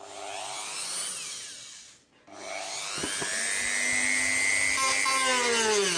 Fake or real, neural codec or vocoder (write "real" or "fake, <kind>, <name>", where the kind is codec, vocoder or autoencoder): real